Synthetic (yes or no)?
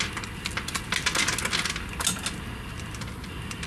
no